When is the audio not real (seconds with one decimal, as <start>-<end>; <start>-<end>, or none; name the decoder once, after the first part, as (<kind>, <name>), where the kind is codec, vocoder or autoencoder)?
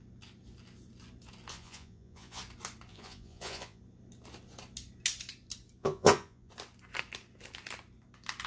1.5-2.4 (vocoder, Vocos); 2.9-3.8; 5.8-6.5